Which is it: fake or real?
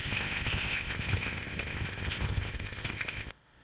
fake